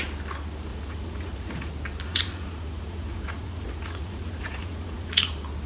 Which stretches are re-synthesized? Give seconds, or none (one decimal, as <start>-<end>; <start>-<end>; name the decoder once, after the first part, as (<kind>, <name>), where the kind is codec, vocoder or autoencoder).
0.7-1.7 (vocoder, Vocos); 2.1-5.3